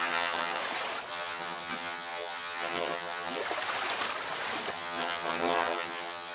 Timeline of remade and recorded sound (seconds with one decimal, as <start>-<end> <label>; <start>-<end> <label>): 0.0-0.6 remade; 0.6-1.1 recorded; 1.1-3.4 remade; 3.4-4.7 recorded; 4.7-6.3 remade